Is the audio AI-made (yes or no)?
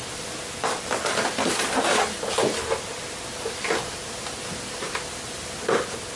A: no